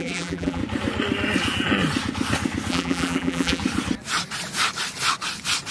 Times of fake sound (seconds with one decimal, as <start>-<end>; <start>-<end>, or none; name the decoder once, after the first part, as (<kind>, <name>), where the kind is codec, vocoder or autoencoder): 0.0-0.6 (vocoder, BigVGAN v2); 2.7-3.6